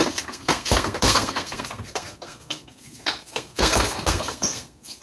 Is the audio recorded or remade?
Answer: remade